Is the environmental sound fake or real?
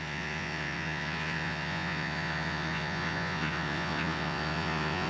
fake